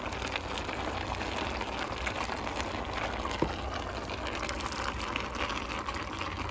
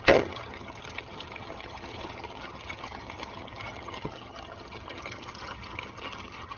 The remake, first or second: second